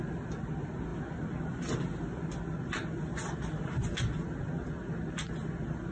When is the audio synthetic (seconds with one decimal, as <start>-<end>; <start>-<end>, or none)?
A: none